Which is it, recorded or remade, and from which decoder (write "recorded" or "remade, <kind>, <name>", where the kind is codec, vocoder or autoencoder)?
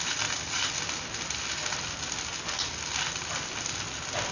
recorded